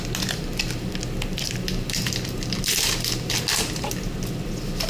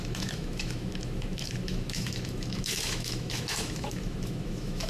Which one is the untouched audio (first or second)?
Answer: first